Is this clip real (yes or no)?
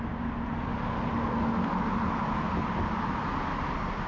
yes